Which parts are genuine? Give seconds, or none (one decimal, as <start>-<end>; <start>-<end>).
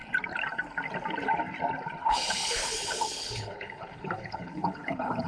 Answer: 0.0-2.0